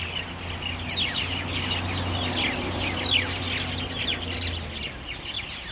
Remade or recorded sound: recorded